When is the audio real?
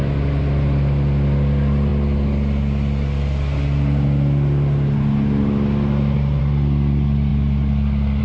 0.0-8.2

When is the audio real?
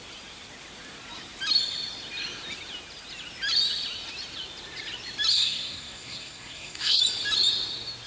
0.0-5.3; 7.0-8.1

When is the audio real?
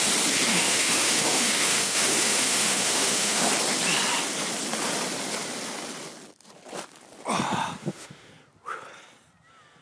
0.0-0.5; 3.5-7.8; 8.3-9.8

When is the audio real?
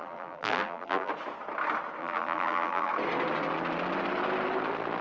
1.1-2.0; 2.9-5.0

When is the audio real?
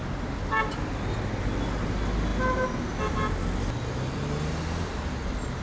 0.0-5.6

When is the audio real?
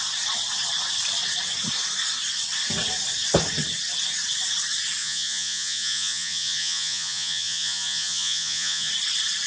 0.0-5.0; 8.9-9.5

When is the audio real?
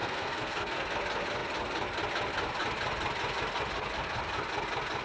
0.9-5.0